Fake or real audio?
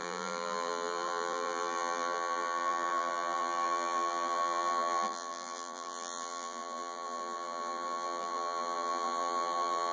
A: fake